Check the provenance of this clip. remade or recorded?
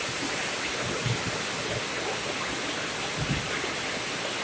recorded